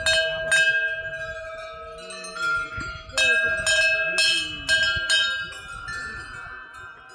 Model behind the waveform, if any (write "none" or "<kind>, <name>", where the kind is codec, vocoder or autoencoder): none